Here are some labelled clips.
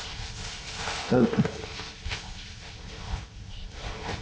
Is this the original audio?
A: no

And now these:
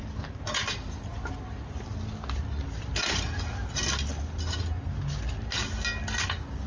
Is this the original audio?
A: yes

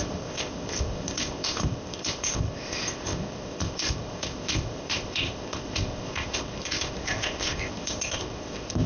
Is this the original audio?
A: no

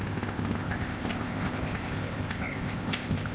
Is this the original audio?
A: no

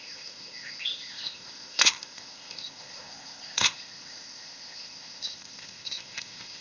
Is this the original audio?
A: no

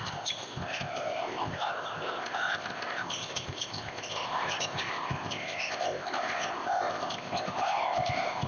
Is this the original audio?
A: no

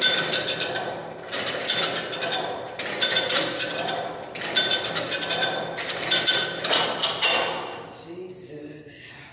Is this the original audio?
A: yes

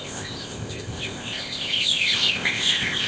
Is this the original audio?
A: no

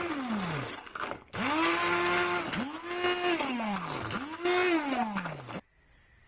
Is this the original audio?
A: yes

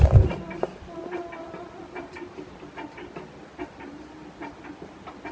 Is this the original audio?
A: yes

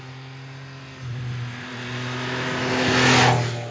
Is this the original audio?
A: yes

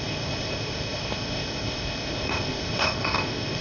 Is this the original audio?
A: no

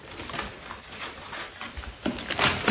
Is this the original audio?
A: yes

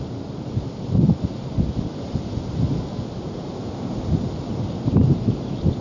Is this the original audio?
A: yes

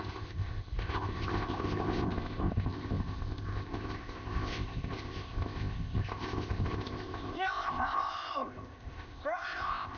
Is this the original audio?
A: no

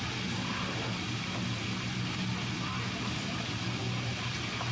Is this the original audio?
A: yes